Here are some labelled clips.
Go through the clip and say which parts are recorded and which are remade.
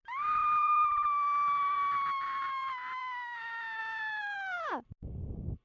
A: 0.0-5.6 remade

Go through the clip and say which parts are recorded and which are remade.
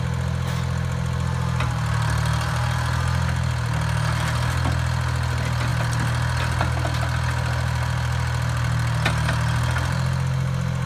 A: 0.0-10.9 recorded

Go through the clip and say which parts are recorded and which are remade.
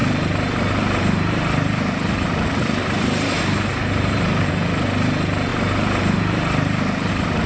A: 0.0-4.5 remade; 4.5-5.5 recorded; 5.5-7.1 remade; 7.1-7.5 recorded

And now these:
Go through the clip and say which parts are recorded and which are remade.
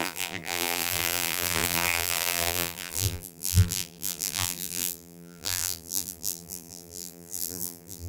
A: 0.0-8.1 remade